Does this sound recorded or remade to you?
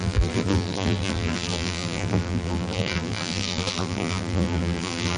remade